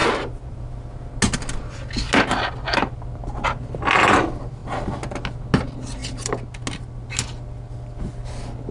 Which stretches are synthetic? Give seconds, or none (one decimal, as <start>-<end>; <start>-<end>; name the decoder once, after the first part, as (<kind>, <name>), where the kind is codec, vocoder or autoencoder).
none